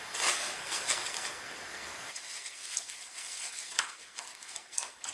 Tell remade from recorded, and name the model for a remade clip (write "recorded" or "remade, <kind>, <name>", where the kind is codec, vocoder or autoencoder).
remade, codec, SNAC